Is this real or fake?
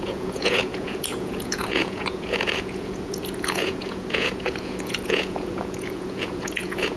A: fake